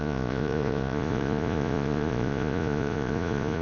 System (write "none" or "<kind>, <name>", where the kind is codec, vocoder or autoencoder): vocoder, Vocos